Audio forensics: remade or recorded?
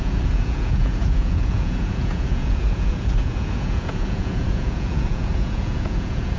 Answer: remade